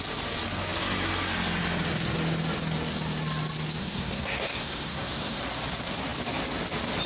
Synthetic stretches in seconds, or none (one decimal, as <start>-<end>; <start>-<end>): 3.8-5.4